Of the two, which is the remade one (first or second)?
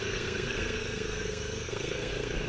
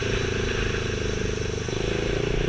first